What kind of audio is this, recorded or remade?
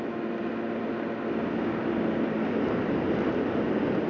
recorded